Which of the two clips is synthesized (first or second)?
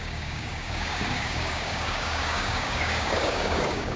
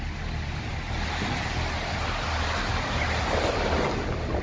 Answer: first